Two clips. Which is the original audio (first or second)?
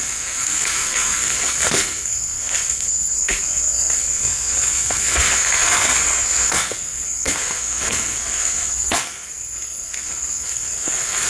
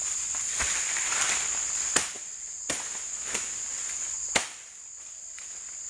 second